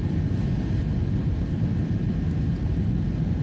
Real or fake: real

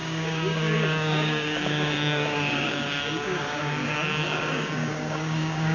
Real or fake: fake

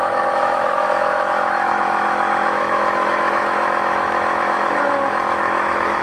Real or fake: fake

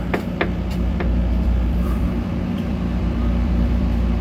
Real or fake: fake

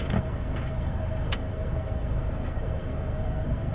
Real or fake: fake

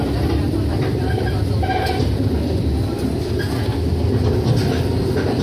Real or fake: real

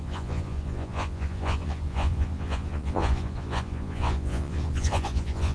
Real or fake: fake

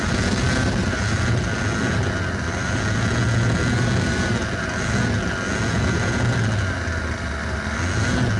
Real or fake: real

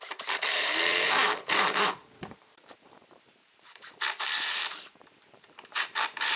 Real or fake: fake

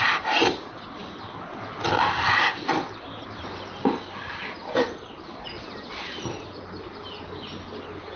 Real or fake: real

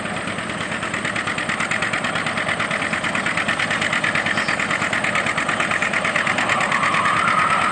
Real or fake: real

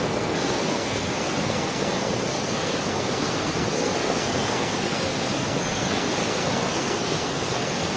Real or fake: fake